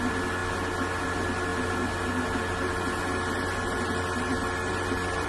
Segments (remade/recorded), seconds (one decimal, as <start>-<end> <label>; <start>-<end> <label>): 0.0-5.3 recorded